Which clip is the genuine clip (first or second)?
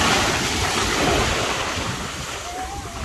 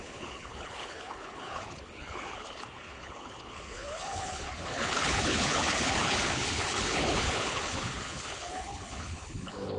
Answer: first